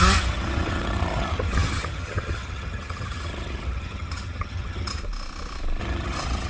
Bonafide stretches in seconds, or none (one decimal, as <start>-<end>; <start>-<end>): 5.0-5.8